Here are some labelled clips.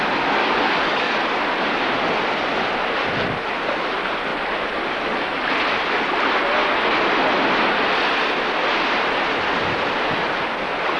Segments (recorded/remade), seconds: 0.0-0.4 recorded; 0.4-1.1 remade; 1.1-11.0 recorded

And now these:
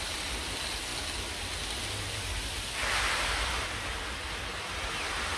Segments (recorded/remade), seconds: 0.0-5.4 recorded

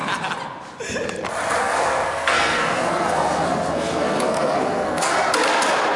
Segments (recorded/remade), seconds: 0.0-1.6 recorded; 1.6-5.1 remade; 5.1-6.0 recorded